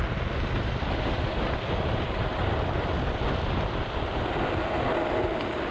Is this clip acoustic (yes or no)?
yes